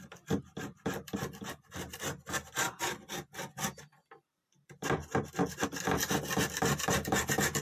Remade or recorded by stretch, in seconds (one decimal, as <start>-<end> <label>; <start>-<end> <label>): 0.0-7.6 recorded